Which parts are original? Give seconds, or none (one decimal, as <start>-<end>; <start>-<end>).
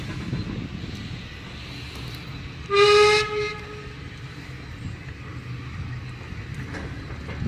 0.0-7.5